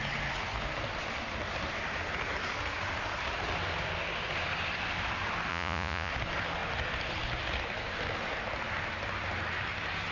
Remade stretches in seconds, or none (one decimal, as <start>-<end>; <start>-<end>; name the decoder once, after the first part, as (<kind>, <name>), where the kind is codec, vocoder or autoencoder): 5.5-6.1 (vocoder, Vocos)